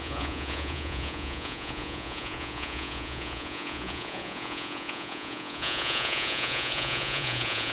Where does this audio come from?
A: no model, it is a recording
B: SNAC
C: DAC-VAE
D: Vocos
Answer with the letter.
D